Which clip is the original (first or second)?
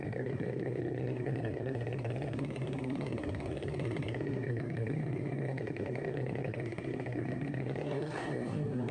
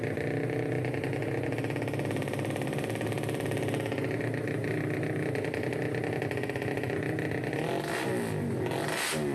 second